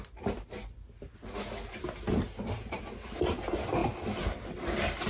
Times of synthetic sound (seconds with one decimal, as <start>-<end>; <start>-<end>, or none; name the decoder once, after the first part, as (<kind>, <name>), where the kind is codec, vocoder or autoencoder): none